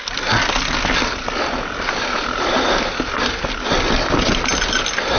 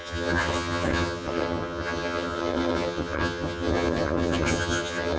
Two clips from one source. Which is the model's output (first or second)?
second